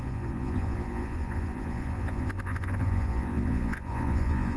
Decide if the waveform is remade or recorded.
remade